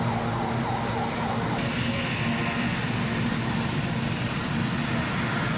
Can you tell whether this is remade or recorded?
recorded